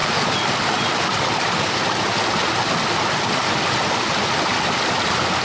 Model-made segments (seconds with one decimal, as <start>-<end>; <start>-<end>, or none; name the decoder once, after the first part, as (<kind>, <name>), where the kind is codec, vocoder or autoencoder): none

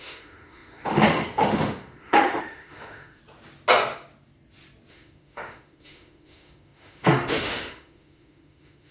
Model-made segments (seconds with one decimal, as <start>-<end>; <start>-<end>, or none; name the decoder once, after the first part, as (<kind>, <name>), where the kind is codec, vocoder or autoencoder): 0.0-3.2 (autoencoder, DAC-VAE); 4.9-8.9

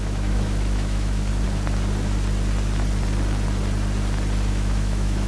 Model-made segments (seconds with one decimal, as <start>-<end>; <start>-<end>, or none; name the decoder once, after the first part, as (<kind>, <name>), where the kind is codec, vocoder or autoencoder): 0.0-1.3 (autoencoder, DAC-VAE); 4.5-5.3

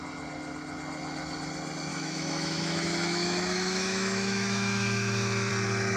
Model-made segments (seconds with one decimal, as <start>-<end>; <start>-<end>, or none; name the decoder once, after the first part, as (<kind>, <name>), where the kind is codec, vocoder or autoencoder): 1.9-5.5 (autoencoder, DAC-VAE)

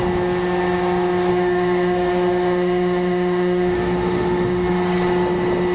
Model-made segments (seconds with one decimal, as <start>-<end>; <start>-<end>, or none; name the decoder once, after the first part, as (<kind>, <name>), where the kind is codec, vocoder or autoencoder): 1.3-4.7 (autoencoder, DAC-VAE)